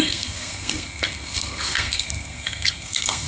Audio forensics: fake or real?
fake